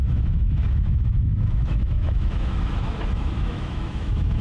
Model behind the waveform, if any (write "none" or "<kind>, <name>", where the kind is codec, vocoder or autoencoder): autoencoder, DAC-VAE